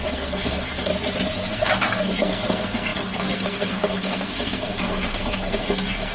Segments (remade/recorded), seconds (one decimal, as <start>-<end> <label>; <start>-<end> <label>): 0.0-0.9 remade; 0.9-1.5 recorded; 1.5-6.1 remade